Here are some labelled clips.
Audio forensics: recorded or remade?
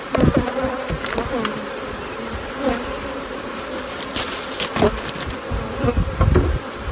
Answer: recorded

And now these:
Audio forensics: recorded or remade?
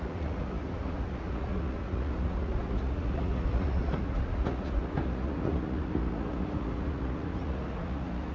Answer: remade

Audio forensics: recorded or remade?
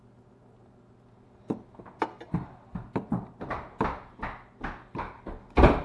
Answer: recorded